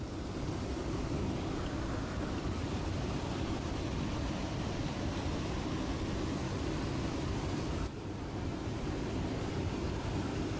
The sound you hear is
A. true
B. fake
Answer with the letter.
A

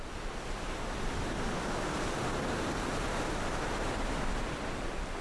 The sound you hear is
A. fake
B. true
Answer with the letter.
B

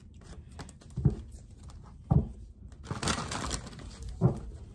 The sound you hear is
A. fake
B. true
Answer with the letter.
B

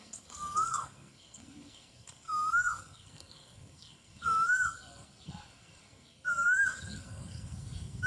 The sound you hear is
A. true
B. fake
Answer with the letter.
B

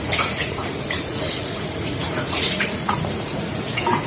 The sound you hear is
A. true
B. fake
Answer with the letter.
B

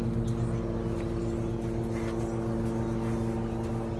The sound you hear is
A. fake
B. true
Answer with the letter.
B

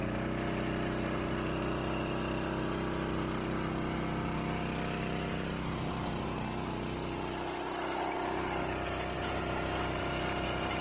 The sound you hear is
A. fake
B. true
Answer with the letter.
B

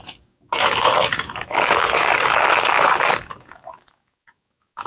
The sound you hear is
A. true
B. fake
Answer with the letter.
B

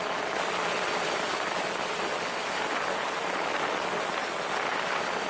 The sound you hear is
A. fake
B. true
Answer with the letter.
A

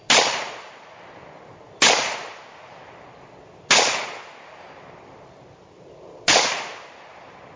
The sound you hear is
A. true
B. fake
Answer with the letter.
A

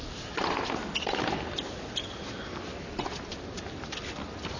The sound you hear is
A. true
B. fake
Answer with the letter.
A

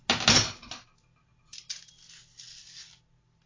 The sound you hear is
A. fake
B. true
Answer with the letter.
B